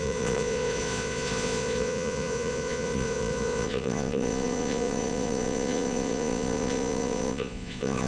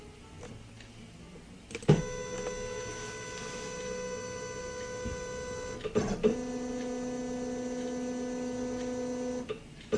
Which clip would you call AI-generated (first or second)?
first